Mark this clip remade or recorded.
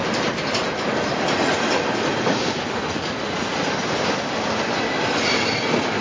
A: recorded